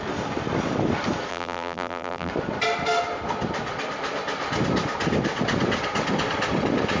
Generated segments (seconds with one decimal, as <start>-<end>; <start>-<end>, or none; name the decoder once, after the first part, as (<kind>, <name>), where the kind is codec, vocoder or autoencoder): 1.3-2.3 (vocoder, BigVGAN v2)